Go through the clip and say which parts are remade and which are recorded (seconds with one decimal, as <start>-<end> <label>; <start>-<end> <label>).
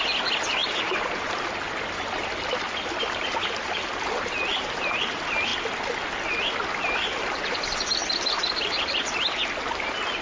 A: 0.0-10.2 recorded